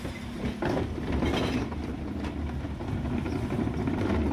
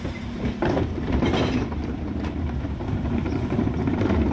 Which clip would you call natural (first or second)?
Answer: first